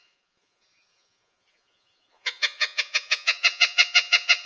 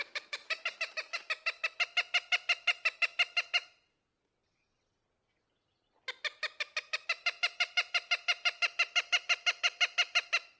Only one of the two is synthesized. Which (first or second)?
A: first